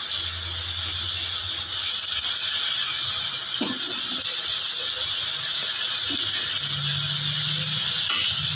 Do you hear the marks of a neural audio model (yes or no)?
no